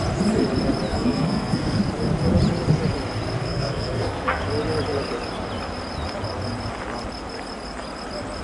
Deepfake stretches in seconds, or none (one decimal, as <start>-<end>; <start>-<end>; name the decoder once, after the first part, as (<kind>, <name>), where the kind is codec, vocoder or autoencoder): 0.9-1.8 (codec, SNAC); 3.4-4.4